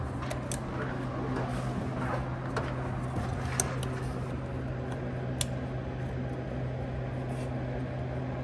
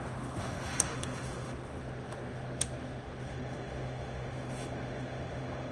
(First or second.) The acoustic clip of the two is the first